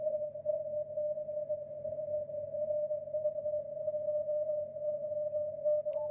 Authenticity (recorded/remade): recorded